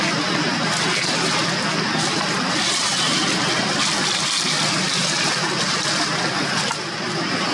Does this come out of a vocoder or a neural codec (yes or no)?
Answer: no